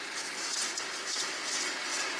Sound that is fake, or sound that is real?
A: real